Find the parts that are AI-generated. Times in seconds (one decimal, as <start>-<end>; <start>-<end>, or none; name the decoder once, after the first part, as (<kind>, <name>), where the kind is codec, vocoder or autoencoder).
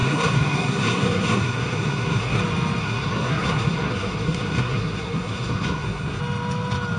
0.0-2.4 (codec, SNAC); 2.8-6.2